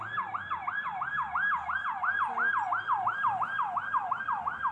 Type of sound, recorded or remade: recorded